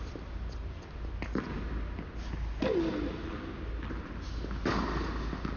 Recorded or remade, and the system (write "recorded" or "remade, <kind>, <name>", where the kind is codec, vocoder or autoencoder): recorded